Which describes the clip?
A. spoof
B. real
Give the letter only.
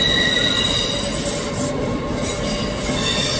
B